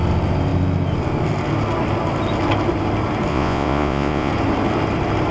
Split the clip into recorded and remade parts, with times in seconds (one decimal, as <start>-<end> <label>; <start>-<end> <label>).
0.0-3.3 recorded; 3.3-4.3 remade; 4.3-5.3 recorded